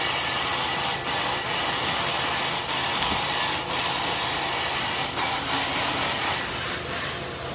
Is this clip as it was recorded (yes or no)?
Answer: yes